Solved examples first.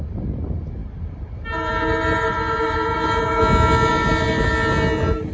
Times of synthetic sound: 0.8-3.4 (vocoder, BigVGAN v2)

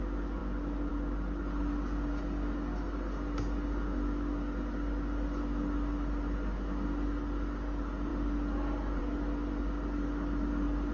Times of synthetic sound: none

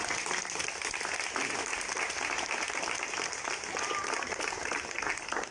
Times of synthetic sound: 1.7-2.8 (vocoder, BigVGAN v2); 4.6-5.1

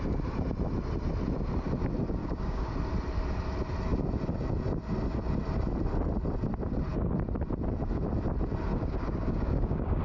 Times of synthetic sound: 2.2-2.7 (codec, DAC); 8.7-10.0